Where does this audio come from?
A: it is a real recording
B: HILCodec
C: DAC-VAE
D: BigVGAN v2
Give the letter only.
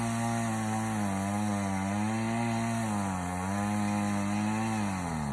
A